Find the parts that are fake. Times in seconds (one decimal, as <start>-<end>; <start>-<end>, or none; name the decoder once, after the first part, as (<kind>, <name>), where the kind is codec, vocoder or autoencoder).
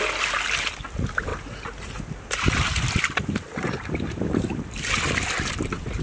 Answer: none